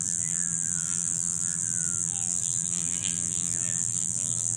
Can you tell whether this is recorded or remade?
remade